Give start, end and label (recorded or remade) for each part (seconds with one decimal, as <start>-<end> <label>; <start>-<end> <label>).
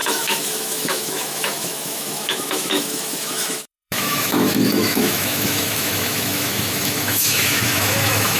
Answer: 0.0-8.4 remade